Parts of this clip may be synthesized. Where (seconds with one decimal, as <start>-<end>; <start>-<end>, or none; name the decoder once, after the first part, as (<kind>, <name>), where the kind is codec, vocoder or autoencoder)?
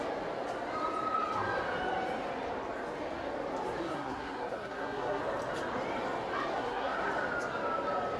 3.8-5.2 (codec, SNAC); 6.5-7.1